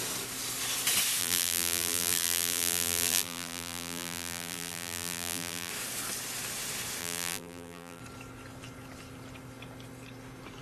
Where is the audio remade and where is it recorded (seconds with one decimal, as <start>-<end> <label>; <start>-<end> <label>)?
0.0-1.2 recorded; 1.2-5.7 remade; 5.7-7.0 recorded; 7.0-8.0 remade; 8.0-10.6 recorded